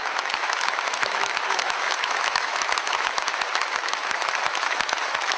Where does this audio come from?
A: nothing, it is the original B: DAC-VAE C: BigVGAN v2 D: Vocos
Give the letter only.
B